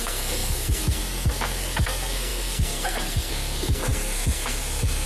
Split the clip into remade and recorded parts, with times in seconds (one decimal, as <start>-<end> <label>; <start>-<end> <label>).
0.0-5.1 remade